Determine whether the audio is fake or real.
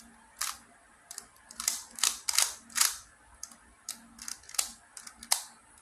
real